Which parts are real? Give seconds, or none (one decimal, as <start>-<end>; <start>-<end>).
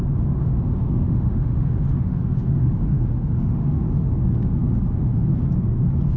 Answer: 0.0-0.4; 4.1-6.2